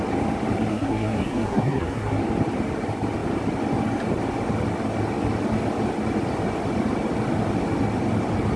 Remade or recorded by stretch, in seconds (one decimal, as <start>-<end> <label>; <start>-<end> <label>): 0.0-0.7 recorded; 0.7-2.2 remade; 2.2-8.6 recorded